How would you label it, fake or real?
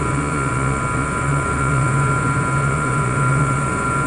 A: fake